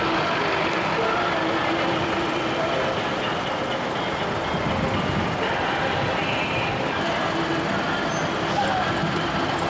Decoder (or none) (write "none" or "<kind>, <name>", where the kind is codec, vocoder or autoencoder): none